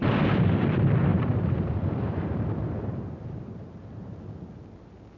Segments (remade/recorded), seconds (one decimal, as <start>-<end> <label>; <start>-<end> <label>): 0.0-1.1 recorded; 1.1-4.2 remade; 4.2-5.2 recorded